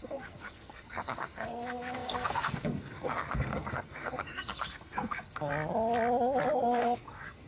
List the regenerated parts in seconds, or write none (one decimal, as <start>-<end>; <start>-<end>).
0.0-5.5; 6.5-7.5